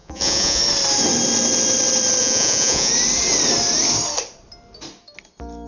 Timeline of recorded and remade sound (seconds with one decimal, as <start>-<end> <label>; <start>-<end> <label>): 0.0-0.6 remade; 0.6-2.2 recorded; 2.2-2.9 remade; 2.9-5.7 recorded